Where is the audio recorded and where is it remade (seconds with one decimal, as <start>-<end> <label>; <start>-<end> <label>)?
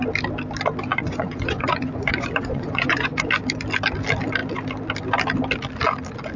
0.0-0.9 recorded; 0.9-3.1 remade; 3.1-6.4 recorded